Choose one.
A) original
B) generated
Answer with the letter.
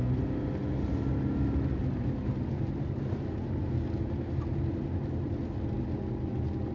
A